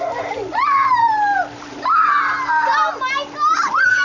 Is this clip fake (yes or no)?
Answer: no